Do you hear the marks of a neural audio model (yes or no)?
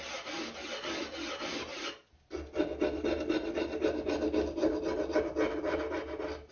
no